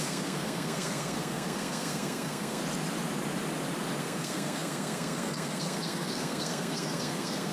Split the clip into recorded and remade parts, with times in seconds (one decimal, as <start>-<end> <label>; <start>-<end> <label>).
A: 0.0-2.6 remade; 2.6-4.0 recorded; 4.0-7.5 remade